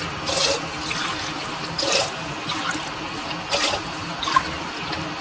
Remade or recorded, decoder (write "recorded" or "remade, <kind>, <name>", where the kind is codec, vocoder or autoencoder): recorded